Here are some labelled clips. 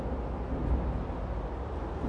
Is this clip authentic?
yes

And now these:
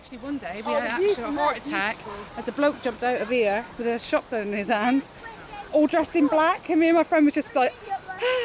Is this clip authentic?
yes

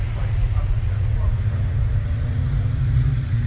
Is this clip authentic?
no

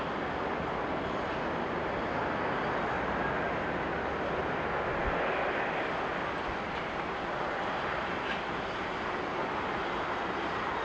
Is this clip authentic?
yes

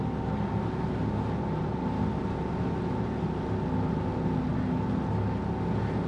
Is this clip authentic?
yes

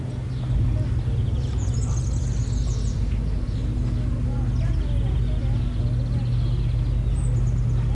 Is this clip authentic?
yes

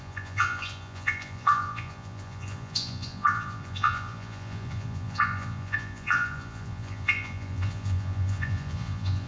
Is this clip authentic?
no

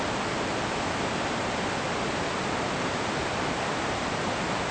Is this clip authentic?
yes